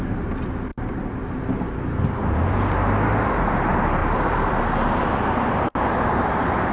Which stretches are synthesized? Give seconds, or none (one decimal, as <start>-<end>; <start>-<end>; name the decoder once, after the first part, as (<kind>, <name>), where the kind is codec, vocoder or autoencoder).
0.7-1.4 (vocoder, BigVGAN v2); 4.0-5.0